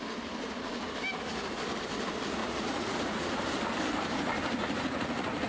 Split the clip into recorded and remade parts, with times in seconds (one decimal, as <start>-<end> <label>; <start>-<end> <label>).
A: 0.0-2.4 recorded; 2.4-3.4 remade; 3.4-4.6 recorded; 4.6-5.5 remade

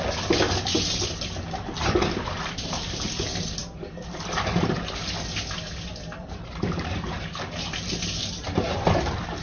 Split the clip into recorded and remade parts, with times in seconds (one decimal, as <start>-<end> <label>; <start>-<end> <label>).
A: 0.0-9.4 recorded

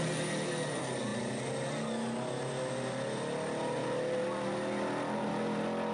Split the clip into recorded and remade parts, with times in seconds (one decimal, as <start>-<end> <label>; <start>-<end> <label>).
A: 0.0-5.9 recorded